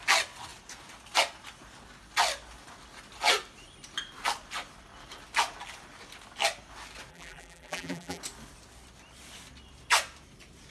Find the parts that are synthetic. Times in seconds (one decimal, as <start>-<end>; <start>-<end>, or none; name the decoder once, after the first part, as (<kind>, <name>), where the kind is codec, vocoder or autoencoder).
7.1-8.2 (vocoder, BigVGAN v2)